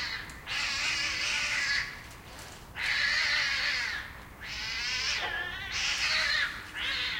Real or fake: real